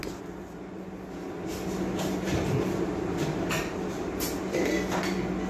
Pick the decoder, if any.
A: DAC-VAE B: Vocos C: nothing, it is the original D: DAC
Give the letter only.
C